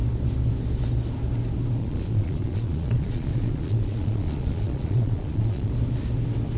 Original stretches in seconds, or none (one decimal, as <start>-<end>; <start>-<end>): 0.0-1.8; 5.7-6.6